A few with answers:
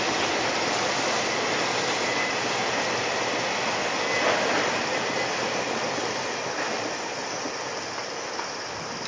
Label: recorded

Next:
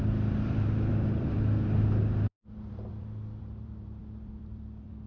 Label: remade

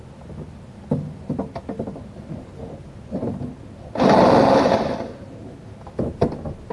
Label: recorded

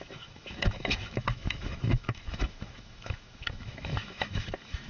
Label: remade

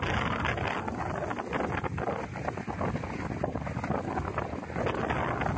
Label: recorded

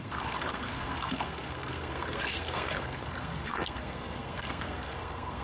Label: remade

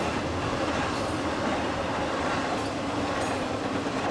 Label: recorded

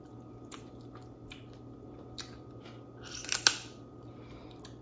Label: recorded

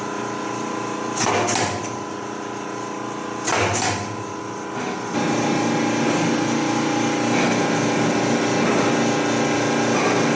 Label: recorded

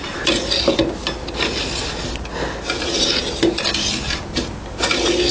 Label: recorded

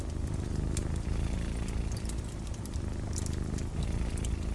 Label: recorded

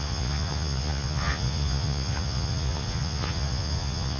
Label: remade